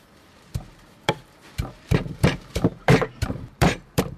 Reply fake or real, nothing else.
fake